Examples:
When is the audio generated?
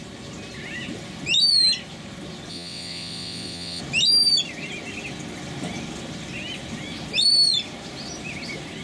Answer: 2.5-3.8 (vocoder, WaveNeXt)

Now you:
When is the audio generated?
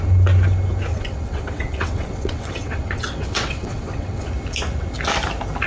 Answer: 0.9-4.3 (vocoder, WaveNeXt)